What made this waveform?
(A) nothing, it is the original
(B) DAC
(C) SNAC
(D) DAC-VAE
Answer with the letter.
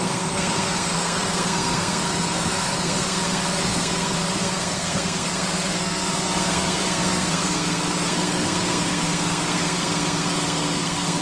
C